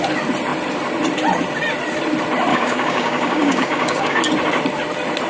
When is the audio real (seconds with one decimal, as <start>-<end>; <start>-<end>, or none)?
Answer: 0.0-2.5; 4.2-5.3